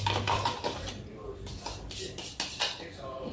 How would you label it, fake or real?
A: real